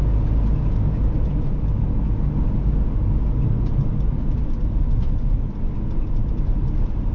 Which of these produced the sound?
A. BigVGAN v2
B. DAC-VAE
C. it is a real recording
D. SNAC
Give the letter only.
C